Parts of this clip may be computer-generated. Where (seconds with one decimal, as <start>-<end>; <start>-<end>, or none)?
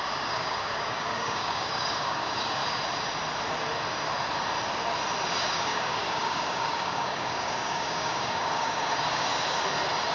0.0-2.6; 5.4-9.3